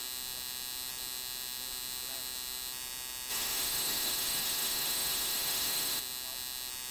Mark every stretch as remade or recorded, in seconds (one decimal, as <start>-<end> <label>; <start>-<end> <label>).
0.0-3.3 recorded; 3.3-6.0 remade; 6.0-6.9 recorded